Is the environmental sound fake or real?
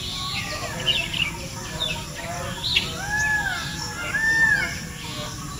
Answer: real